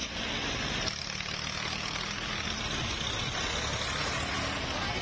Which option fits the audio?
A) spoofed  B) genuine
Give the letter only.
B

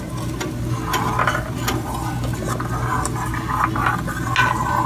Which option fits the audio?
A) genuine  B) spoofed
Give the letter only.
A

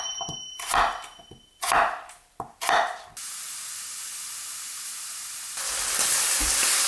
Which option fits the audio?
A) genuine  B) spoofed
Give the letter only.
A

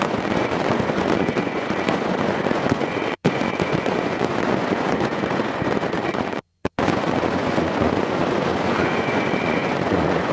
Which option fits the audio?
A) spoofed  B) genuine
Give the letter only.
A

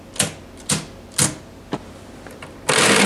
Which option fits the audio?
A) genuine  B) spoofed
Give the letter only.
A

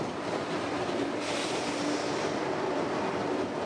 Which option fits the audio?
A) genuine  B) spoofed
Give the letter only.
B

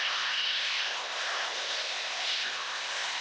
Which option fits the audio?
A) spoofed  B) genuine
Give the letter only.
A